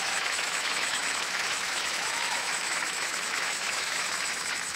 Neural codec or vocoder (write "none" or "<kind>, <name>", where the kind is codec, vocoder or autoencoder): autoencoder, DAC-VAE